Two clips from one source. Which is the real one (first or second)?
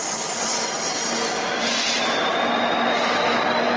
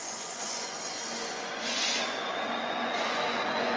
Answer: first